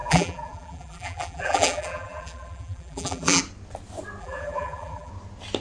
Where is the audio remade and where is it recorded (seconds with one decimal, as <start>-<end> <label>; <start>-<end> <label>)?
0.0-3.4 remade; 3.4-4.2 recorded; 4.2-5.1 remade; 5.1-5.6 recorded